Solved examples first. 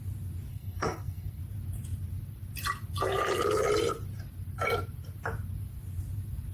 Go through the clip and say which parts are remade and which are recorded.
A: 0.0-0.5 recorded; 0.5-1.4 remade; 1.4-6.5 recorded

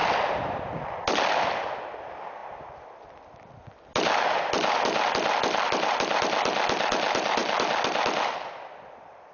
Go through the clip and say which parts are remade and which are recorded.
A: 0.0-9.3 recorded

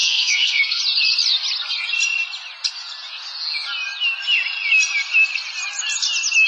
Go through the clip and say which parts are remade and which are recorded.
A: 0.0-0.8 remade; 0.8-6.5 recorded

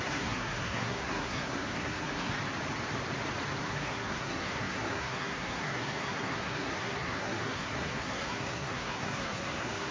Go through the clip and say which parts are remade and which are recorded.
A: 0.0-2.3 remade; 2.3-3.6 recorded; 3.6-9.9 remade

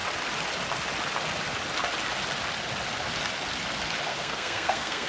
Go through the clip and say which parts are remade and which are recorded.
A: 0.0-4.1 recorded; 4.1-5.1 remade

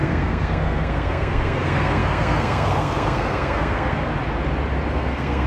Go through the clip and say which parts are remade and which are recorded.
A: 0.0-4.1 remade; 4.1-4.9 recorded; 4.9-5.5 remade

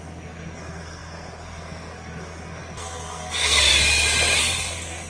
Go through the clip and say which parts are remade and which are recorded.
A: 0.0-3.7 remade; 3.7-4.4 recorded; 4.4-5.1 remade